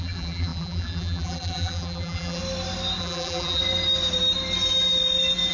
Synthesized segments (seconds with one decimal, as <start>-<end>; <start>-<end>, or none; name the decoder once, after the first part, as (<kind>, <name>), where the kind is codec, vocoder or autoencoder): 0.0-2.4 (vocoder, BigVGAN v2); 3.0-3.6